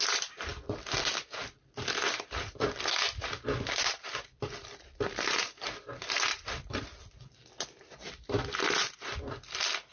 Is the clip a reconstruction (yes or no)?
yes